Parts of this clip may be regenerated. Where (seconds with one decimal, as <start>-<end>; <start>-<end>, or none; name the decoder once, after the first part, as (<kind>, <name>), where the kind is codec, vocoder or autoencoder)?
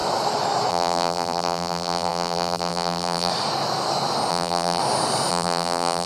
0.7-3.3 (vocoder, BigVGAN v2); 4.3-4.8; 5.3-6.1